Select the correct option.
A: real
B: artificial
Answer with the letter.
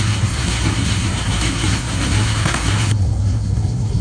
B